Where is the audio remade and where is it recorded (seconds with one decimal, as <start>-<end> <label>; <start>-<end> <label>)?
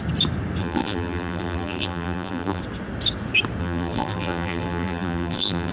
0.0-0.6 recorded; 0.6-2.6 remade; 2.6-3.6 recorded; 3.6-5.7 remade